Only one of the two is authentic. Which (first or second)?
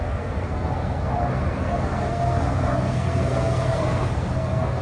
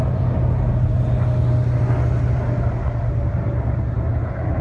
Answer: second